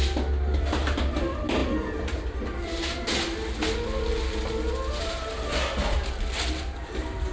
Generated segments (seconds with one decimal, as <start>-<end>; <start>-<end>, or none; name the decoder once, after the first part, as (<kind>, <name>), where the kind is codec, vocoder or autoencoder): none